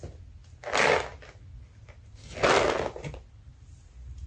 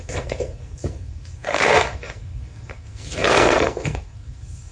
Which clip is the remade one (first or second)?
second